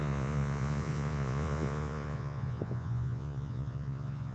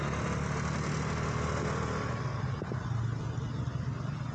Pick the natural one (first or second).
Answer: second